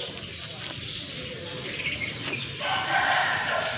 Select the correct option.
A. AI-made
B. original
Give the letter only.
B